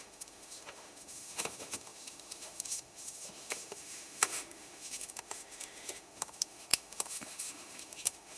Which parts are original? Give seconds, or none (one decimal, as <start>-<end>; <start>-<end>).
none